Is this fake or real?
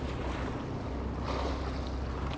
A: real